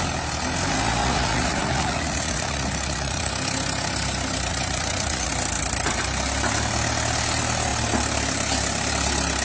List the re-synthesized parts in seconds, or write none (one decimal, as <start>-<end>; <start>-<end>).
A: 1.0-3.3; 4.5-5.3